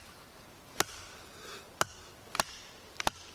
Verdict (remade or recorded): recorded